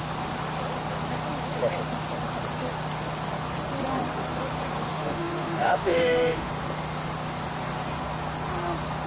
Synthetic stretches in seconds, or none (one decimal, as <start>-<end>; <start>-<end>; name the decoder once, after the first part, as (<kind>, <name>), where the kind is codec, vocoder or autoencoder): 4.9-6.5 (autoencoder, DAC-VAE)